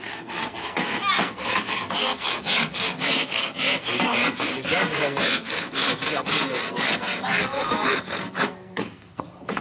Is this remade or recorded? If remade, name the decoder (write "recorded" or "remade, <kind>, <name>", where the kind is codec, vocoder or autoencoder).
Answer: remade, codec, SNAC